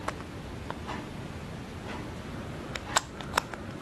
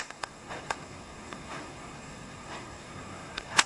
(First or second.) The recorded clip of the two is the first